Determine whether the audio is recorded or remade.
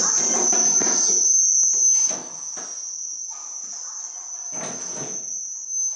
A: recorded